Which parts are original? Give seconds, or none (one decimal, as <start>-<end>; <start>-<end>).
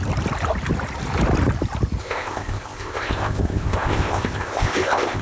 0.0-2.0